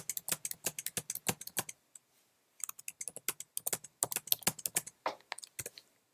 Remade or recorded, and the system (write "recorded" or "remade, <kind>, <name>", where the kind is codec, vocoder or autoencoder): recorded